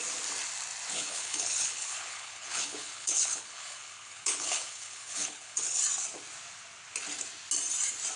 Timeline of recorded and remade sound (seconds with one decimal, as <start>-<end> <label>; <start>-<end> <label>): 0.0-0.9 recorded; 0.9-5.8 remade; 5.8-8.2 recorded